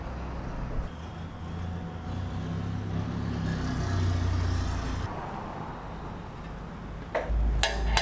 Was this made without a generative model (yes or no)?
yes